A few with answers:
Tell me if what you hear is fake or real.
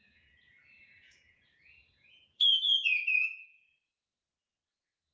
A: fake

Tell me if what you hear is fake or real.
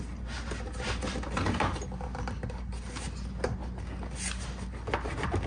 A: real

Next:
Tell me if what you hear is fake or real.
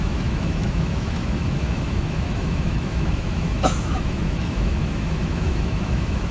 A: fake